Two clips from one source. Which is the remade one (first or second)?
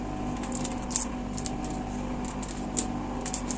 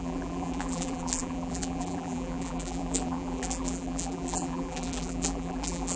second